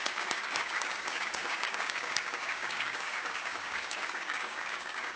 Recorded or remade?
remade